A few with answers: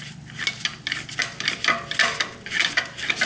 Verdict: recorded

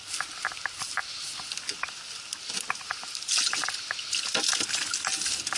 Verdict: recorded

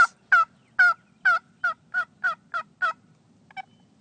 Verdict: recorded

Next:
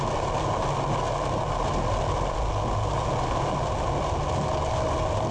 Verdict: recorded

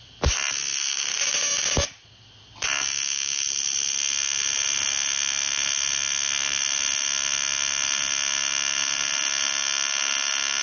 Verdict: recorded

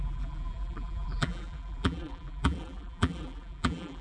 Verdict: remade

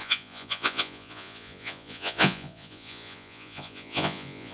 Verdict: remade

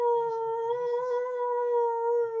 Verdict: remade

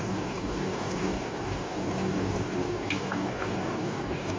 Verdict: remade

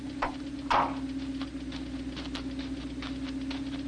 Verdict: recorded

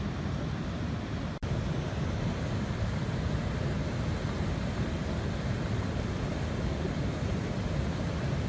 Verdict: recorded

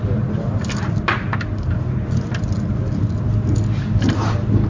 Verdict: recorded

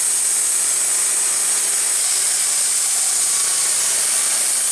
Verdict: recorded